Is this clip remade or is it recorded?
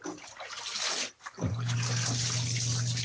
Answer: recorded